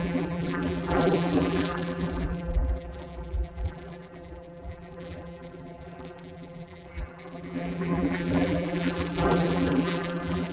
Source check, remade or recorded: remade